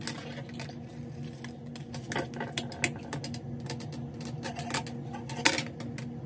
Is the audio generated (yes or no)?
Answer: no